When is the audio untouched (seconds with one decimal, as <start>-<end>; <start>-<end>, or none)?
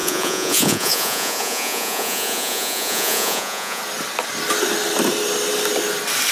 3.8-6.3